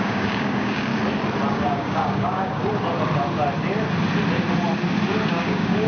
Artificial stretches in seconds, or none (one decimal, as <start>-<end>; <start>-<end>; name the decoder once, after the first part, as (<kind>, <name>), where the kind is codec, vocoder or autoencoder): 0.0-0.9 (codec, DAC); 1.5-2.6; 5.3-5.9